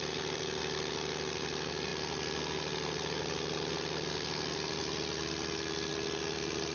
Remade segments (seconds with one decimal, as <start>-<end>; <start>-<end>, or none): none